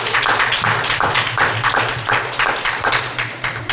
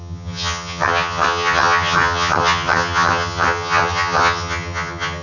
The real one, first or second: first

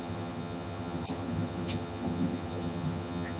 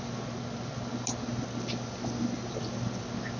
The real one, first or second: second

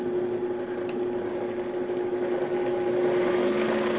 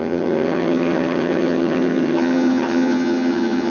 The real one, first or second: first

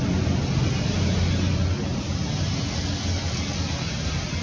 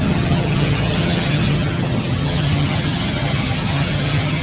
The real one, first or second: first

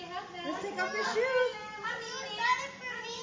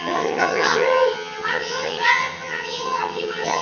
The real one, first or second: first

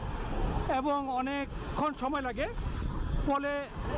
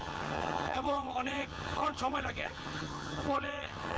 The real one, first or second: first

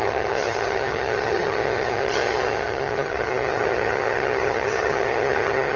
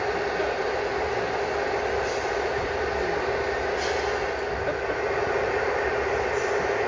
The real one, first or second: second